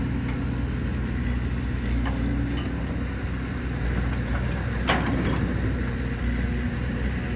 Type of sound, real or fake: real